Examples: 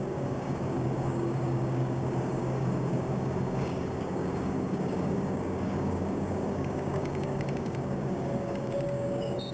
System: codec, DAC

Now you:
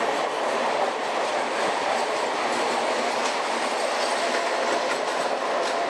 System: none